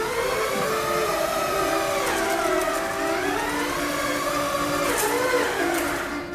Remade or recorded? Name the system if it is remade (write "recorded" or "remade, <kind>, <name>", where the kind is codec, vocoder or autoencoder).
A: recorded